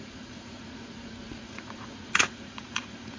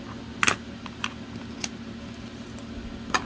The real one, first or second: second